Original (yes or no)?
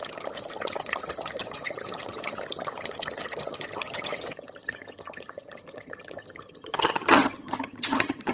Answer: no